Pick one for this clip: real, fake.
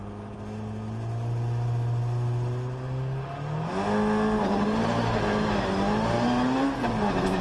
real